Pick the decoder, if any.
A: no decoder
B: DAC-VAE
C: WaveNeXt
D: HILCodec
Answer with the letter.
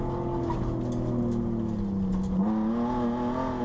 A